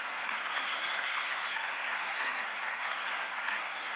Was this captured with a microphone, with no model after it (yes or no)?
no